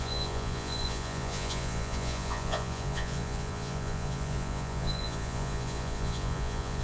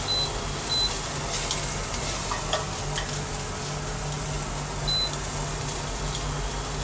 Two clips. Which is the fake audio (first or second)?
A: first